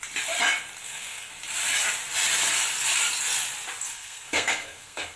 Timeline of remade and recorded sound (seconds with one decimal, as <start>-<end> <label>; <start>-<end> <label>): 0.0-0.8 recorded; 0.8-1.3 remade; 1.3-3.9 recorded; 3.9-5.2 remade